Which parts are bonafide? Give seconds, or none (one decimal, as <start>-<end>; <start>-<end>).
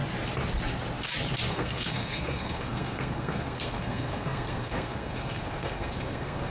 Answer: 0.0-1.5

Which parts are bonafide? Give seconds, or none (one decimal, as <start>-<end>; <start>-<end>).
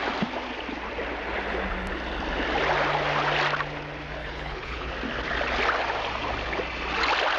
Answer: 0.0-4.2; 4.9-7.4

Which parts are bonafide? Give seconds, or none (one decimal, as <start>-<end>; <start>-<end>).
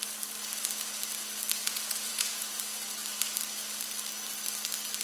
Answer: 0.0-1.6; 2.6-5.0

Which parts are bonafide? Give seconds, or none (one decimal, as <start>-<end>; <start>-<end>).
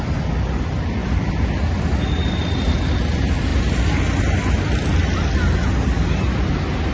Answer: 0.0-6.9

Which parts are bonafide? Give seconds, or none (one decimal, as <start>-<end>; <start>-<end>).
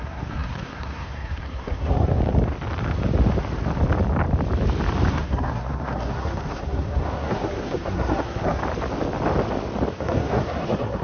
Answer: 2.2-5.1; 8.6-9.9